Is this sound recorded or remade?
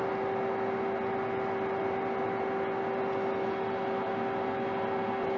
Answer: recorded